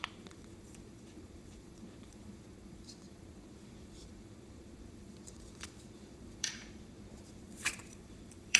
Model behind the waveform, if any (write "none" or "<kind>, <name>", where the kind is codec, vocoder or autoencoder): vocoder, Vocos